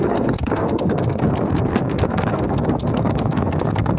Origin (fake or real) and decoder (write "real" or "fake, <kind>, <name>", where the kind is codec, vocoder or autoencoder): fake, codec, SNAC